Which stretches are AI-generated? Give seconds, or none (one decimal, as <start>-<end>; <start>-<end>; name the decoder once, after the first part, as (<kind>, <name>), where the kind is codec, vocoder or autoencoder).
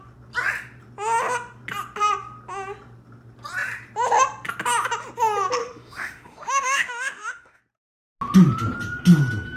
5.6-7.6 (autoencoder, DAC-VAE)